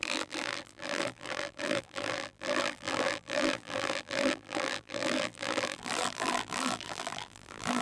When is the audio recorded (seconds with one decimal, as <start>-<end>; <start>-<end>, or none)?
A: none